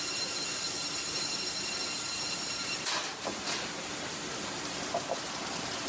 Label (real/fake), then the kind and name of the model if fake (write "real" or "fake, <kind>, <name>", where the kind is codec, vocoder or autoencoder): real